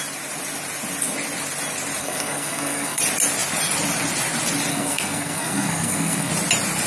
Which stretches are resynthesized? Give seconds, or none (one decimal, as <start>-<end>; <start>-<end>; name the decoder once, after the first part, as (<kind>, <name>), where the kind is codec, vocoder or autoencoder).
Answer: 2.0-3.0 (codec, SNAC); 4.7-6.3